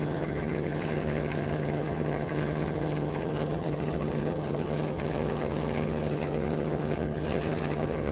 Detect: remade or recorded remade